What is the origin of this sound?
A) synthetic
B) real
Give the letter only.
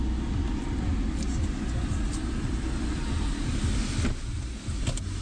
B